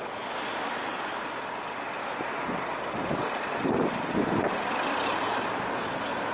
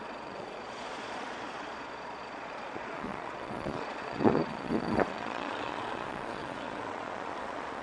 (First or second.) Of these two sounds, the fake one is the second